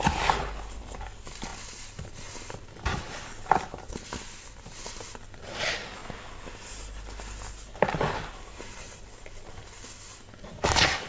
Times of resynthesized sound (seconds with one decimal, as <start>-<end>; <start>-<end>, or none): 10.5-11.1